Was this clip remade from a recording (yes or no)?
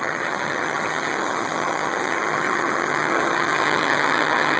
yes